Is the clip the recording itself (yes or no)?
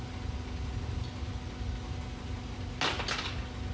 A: yes